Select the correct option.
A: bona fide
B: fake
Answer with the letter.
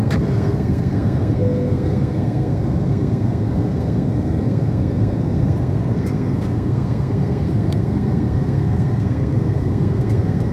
B